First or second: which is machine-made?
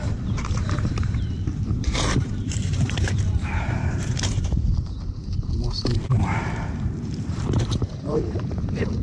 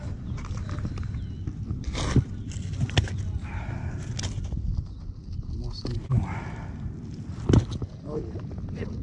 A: first